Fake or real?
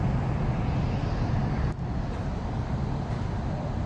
real